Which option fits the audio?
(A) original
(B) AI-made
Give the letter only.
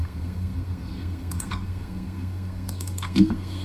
B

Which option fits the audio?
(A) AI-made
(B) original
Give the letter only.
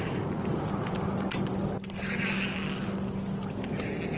B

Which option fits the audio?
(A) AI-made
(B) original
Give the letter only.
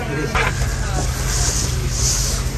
B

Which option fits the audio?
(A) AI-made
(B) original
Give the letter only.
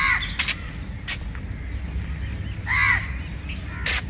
B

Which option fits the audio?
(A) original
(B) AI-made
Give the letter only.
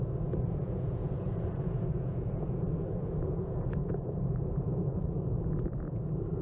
B